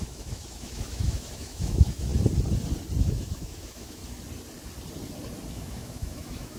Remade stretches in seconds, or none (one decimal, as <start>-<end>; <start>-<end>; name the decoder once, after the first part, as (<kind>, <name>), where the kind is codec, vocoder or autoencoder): 0.0-2.1 (autoencoder, DAC-VAE); 3.0-4.0; 5.5-6.6